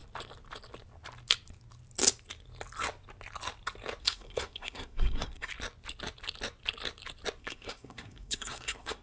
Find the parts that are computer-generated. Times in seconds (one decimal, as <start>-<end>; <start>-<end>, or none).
4.0-5.5; 7.4-9.0